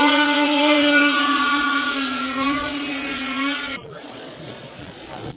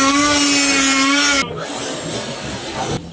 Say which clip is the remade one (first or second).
first